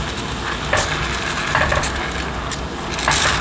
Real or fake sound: real